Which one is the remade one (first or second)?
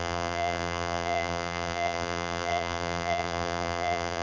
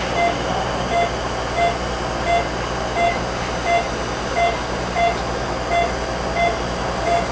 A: first